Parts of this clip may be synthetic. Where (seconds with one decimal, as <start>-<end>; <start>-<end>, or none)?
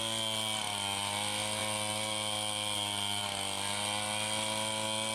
none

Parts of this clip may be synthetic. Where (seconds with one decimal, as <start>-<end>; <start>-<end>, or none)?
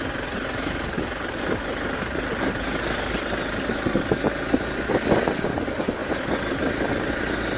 none